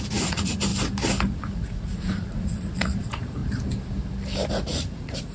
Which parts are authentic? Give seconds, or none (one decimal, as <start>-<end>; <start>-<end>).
0.7-1.3; 3.4-4.5